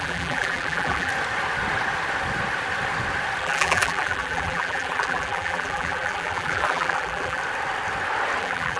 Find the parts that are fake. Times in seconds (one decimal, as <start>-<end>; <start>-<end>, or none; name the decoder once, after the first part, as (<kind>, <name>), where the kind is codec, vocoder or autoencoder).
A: 0.0-1.1 (vocoder, BigVGAN v2); 3.4-7.4; 8.4-8.8